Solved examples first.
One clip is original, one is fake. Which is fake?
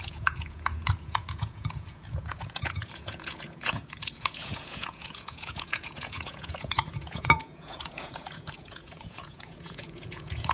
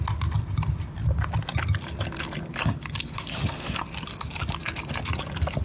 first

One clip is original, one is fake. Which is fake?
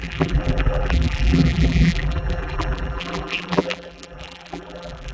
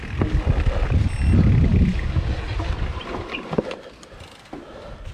first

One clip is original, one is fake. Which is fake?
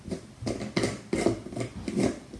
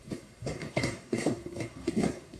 second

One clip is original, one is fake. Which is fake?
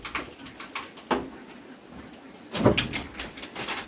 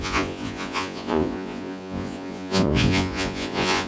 second